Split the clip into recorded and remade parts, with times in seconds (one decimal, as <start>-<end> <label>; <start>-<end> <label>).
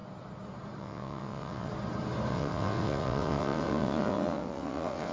0.0-0.8 recorded; 0.8-1.7 remade; 1.7-2.3 recorded; 2.3-5.1 remade